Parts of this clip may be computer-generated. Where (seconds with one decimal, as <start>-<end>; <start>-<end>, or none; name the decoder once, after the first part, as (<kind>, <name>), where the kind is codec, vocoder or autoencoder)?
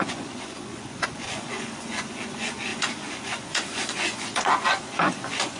0.0-5.6 (vocoder, Vocos)